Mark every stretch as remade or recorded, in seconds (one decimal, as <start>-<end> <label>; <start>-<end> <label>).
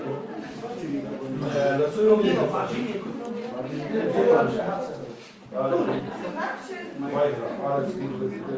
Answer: 0.0-8.6 recorded